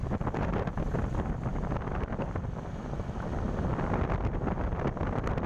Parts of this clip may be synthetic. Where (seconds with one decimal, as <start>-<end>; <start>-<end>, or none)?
none